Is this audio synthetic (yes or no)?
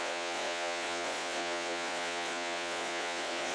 yes